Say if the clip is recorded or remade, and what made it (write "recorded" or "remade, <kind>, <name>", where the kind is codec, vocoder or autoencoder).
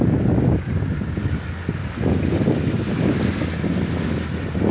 recorded